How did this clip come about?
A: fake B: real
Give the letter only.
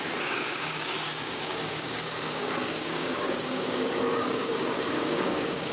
A